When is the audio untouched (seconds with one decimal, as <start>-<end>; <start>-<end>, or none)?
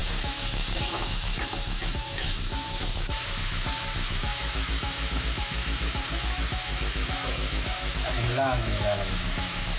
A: none